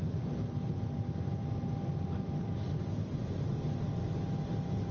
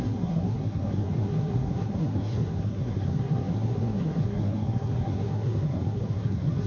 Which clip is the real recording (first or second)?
first